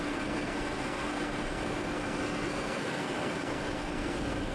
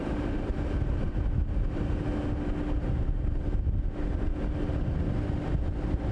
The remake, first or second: first